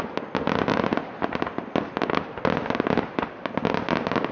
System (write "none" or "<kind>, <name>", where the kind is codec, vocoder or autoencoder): none